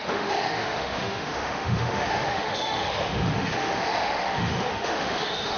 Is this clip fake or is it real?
fake